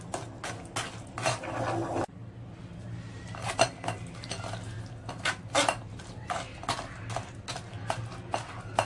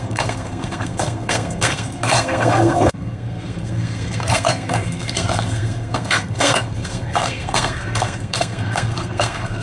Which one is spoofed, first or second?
second